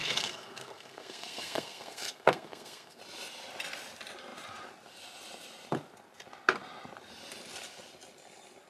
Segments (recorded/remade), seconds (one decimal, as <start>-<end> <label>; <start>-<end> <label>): 0.0-3.0 remade; 3.0-8.7 recorded